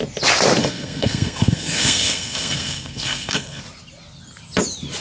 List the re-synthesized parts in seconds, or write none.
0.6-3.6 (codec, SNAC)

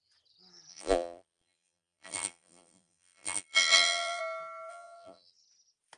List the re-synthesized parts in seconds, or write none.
0.7-4.2 (vocoder, BigVGAN v2); 4.7-5.3

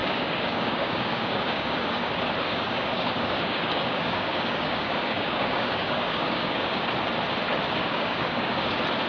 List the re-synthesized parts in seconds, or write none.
0.0-2.1 (codec, DAC); 2.5-6.9; 7.8-8.7

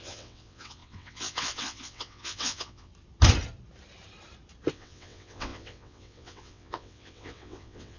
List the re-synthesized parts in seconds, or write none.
0.0-2.9 (vocoder, WaveNeXt); 4.7-8.0

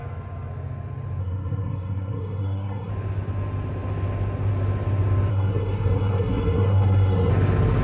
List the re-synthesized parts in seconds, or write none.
1.2-2.9 (codec, SNAC); 5.3-7.3

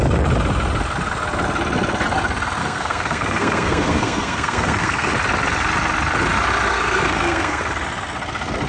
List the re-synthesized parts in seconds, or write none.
2.6-5.1 (codec, SNAC); 6.7-7.6

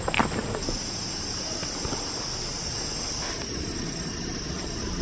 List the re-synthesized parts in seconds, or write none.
none

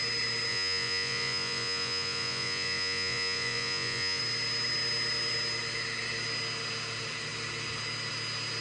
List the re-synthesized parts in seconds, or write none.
0.5-4.2 (vocoder, Vocos)